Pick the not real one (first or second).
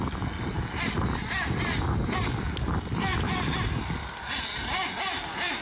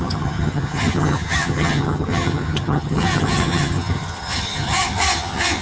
second